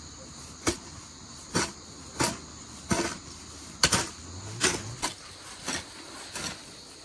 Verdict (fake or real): real